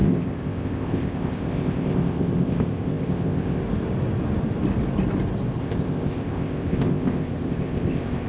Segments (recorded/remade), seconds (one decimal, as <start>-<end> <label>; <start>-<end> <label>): 0.0-3.6 remade; 3.6-5.6 recorded; 5.6-8.3 remade